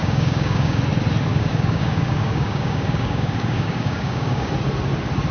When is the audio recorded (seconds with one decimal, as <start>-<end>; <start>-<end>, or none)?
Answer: 0.8-1.3; 4.5-5.3